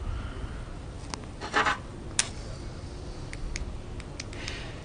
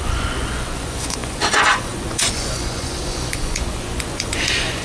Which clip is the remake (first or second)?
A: second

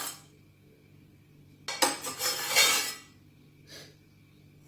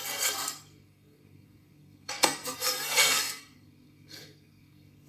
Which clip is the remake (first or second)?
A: second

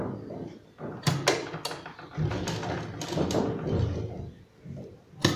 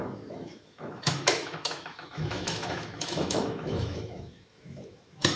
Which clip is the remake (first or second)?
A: second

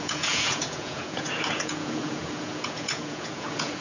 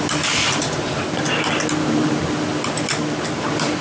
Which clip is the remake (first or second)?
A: first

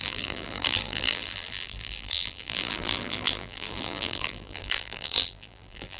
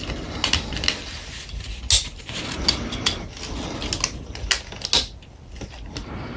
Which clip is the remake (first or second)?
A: first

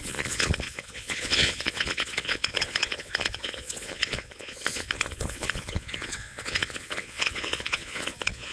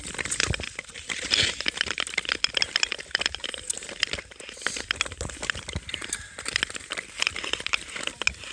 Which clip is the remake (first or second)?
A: first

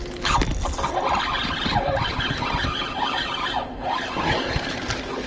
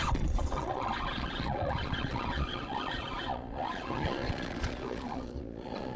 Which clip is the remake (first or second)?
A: second